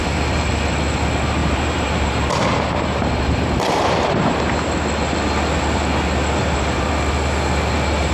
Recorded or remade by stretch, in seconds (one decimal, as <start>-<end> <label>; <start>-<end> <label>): 0.0-1.4 recorded; 1.4-4.4 remade; 4.4-6.4 recorded; 6.4-6.9 remade; 6.9-8.1 recorded

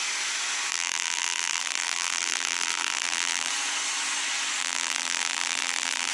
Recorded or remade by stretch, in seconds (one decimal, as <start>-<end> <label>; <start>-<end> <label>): 0.0-0.7 recorded; 0.7-3.5 remade; 3.5-4.6 recorded; 4.6-6.1 remade